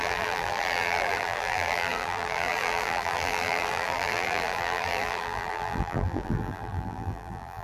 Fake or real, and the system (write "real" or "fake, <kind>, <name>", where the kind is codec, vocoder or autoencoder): fake, vocoder, BigVGAN v2